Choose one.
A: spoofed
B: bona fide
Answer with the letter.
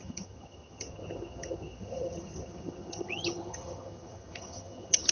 A